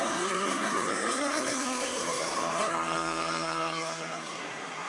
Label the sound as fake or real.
fake